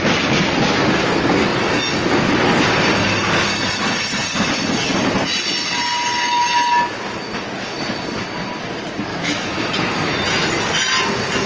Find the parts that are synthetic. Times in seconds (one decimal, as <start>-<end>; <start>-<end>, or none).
9.1-9.7